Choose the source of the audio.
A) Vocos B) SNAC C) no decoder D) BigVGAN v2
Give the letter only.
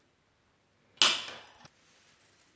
C